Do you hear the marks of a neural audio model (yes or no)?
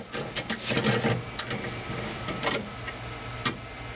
no